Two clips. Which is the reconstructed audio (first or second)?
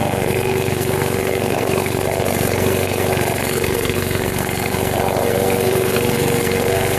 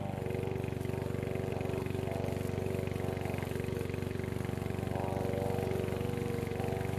first